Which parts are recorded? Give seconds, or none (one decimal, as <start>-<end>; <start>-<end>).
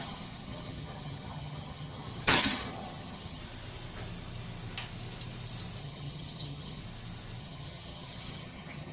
3.4-5.8; 6.8-7.4